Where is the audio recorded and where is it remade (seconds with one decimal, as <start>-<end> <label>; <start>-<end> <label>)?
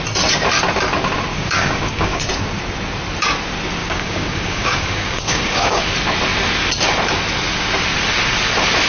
0.0-1.3 recorded; 1.3-2.2 remade; 2.2-3.8 recorded; 3.8-5.8 remade; 5.8-8.9 recorded